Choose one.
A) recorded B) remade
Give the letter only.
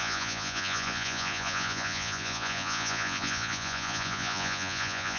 B